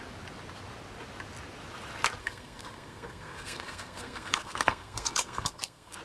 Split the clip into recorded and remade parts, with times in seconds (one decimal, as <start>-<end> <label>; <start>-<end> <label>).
0.0-2.2 recorded; 2.2-6.0 remade